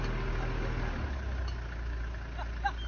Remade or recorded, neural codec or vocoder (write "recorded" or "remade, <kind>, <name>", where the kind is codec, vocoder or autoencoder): recorded